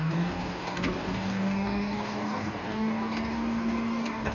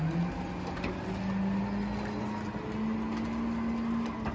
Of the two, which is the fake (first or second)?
first